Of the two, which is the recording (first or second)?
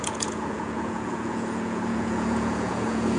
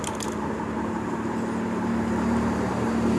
second